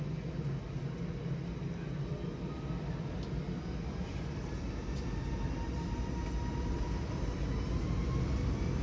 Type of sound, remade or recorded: recorded